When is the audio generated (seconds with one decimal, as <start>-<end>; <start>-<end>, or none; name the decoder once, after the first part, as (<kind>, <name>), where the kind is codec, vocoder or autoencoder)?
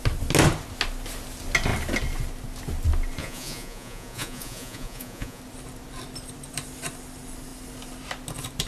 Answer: 3.2-5.4 (vocoder, Vocos)